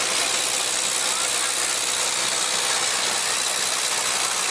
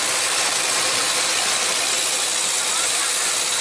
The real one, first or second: first